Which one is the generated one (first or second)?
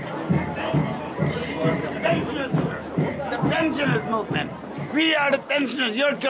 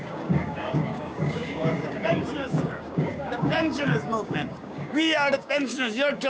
second